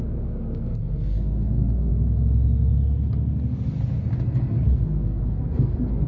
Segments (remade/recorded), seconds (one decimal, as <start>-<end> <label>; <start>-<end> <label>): 0.0-1.9 remade; 1.9-4.5 recorded; 4.5-6.1 remade